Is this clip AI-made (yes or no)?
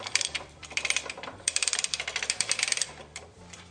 yes